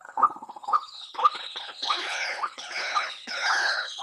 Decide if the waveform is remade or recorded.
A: remade